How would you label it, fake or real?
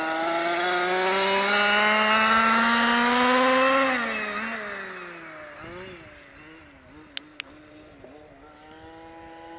real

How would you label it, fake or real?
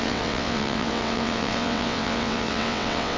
fake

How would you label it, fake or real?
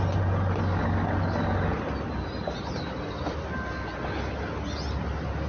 real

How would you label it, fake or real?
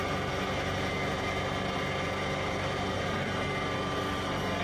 real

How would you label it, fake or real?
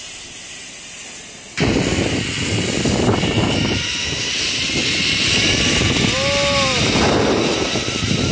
real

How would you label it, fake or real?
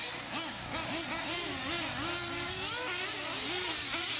real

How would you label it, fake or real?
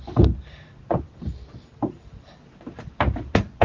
real